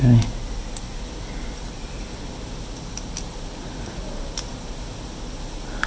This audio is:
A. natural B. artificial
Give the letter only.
A